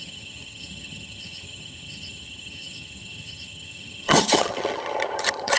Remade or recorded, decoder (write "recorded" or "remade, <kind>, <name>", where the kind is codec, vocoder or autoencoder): remade, vocoder, HiFi-GAN